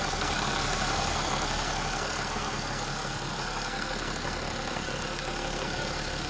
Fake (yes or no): yes